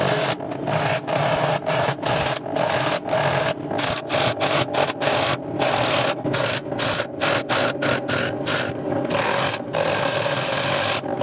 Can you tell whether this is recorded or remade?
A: recorded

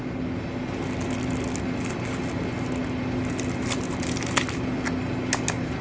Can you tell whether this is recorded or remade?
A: recorded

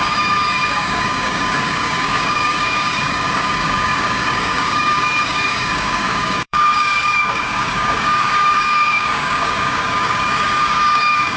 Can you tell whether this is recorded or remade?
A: remade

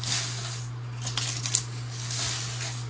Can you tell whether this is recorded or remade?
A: recorded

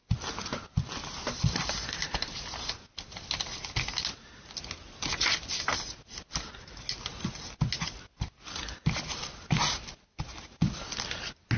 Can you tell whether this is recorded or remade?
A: recorded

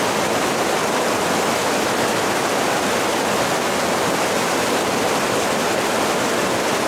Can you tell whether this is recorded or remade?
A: recorded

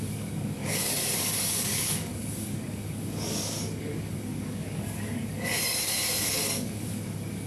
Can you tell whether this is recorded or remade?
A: remade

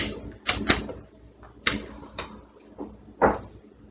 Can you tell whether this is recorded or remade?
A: recorded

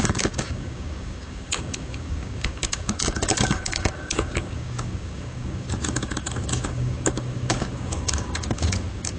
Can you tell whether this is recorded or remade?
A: remade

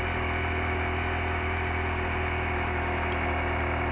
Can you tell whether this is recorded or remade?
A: recorded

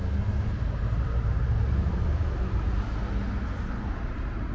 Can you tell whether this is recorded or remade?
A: recorded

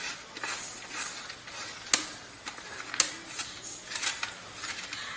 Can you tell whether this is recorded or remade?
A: recorded